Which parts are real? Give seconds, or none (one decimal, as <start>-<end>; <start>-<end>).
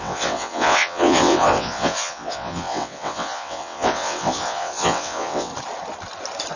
5.5-6.6